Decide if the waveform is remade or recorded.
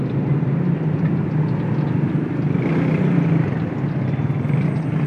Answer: recorded